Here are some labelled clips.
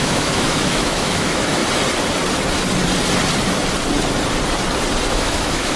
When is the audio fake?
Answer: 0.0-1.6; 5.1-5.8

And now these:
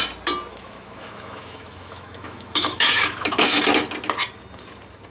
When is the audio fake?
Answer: 0.5-3.6

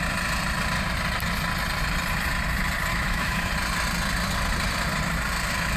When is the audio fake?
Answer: 2.9-3.5

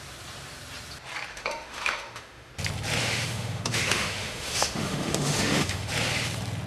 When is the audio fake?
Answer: 1.3-2.5; 3.0-5.9